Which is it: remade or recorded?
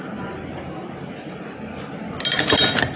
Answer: recorded